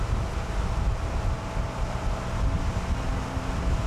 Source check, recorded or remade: recorded